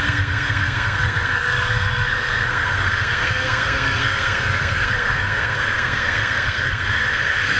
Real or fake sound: fake